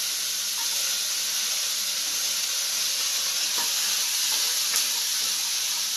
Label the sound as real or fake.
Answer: real